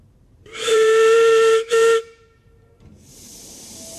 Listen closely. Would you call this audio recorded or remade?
remade